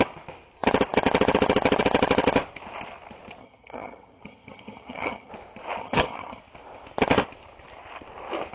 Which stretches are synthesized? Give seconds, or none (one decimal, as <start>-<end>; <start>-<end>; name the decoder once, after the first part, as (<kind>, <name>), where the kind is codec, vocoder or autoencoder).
3.4-5.3 (vocoder, HiFi-GAN); 5.8-6.4